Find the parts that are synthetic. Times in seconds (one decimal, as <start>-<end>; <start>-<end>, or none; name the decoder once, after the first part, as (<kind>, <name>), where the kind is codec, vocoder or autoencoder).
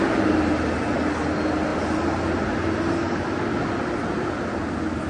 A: none